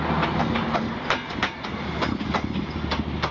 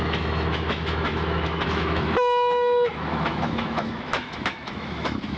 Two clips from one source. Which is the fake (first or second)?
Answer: second